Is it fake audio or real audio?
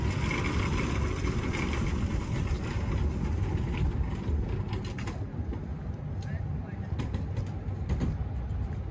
real